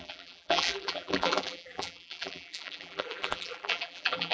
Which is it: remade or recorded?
remade